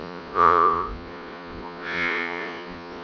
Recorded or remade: remade